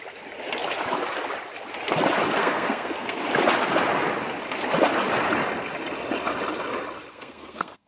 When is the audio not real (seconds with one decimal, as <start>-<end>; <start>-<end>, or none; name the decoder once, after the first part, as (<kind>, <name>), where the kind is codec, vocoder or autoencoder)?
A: 2.4-3.2 (codec, SNAC); 7.1-7.9